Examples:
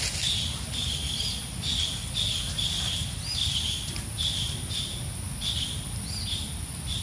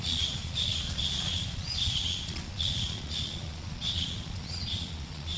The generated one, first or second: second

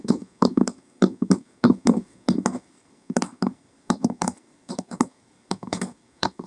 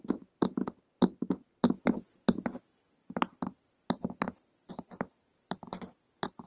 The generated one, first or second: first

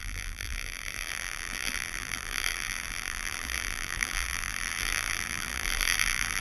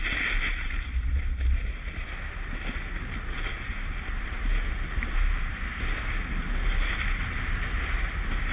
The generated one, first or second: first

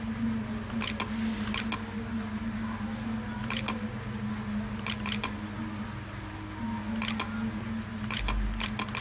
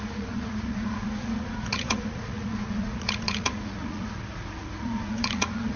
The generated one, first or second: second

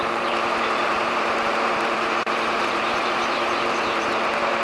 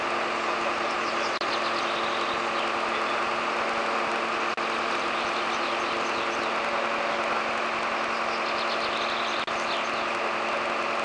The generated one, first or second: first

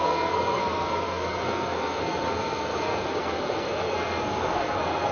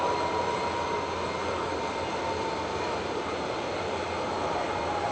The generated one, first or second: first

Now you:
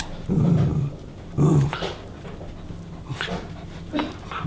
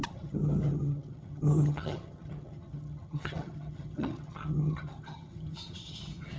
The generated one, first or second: second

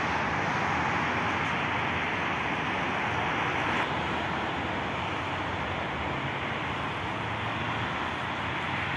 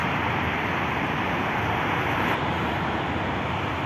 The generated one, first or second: second